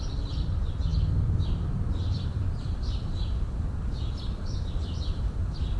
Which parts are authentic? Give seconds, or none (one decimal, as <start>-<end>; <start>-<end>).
none